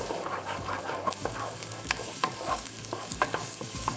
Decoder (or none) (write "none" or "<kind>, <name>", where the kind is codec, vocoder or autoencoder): codec, DAC